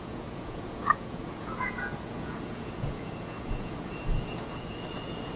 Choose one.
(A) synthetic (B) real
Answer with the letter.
A